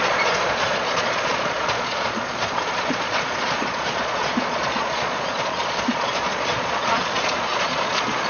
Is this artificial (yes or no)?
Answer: yes